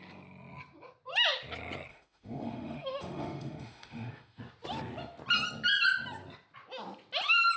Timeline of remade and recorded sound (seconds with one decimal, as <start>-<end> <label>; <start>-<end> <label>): 0.0-1.9 recorded; 1.9-4.4 remade; 4.4-7.6 recorded